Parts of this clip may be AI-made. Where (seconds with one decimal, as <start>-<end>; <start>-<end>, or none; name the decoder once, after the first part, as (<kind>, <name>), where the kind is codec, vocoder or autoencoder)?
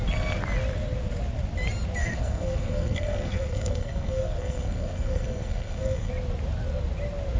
2.0-6.1 (codec, SNAC)